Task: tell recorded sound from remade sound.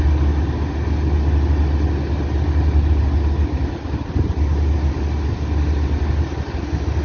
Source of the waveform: recorded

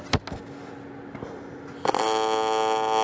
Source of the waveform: recorded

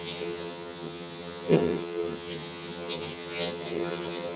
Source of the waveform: remade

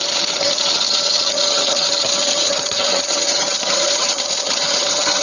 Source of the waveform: remade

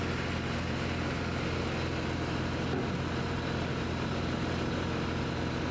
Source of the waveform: recorded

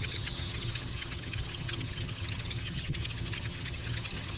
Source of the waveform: remade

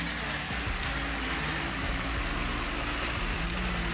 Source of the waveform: recorded